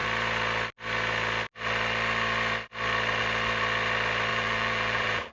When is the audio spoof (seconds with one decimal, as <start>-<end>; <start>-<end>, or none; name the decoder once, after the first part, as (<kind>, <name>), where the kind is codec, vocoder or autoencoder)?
4.3-5.3 (vocoder, BigVGAN v2)